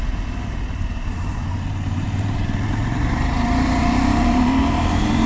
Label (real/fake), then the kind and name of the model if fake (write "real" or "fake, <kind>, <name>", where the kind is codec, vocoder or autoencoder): fake, vocoder, BigVGAN v2